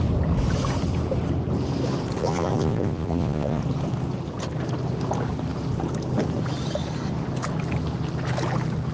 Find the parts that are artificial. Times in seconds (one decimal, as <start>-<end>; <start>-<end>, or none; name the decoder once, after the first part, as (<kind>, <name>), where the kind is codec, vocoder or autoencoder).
2.2-3.6 (vocoder, Vocos)